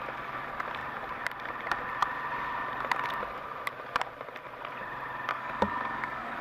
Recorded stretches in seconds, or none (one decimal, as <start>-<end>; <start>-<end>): 0.0-5.3